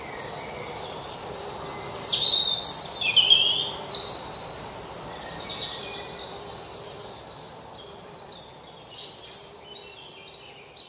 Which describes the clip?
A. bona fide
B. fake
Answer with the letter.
A